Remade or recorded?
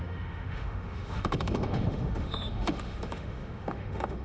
remade